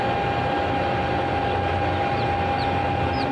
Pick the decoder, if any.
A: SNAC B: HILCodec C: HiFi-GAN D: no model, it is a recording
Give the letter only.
D